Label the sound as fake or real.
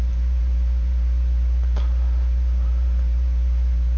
fake